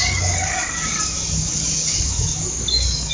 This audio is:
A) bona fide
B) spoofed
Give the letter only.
B